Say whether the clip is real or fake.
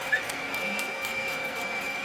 fake